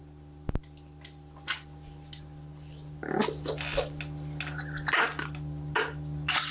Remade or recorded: recorded